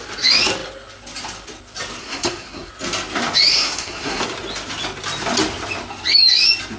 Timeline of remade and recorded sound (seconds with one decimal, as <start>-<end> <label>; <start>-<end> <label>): 0.0-2.0 recorded; 2.0-2.7 remade; 2.7-3.5 recorded; 3.5-4.2 remade; 4.2-6.8 recorded